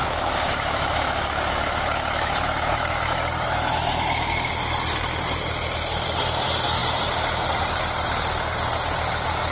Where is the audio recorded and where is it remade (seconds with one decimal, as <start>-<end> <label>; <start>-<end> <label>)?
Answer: 0.0-4.5 remade; 4.5-9.5 recorded